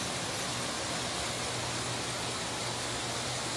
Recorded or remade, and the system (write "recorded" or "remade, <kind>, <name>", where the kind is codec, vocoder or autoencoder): recorded